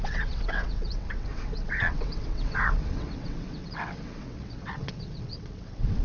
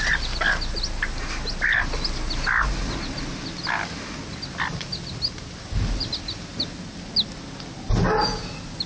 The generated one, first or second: first